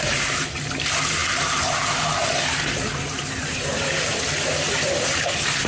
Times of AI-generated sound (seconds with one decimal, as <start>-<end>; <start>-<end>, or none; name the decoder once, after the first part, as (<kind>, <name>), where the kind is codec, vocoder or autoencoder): 3.4-3.9 (vocoder, BigVGAN v2)